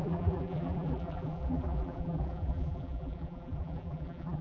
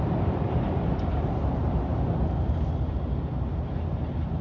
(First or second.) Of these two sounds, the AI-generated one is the first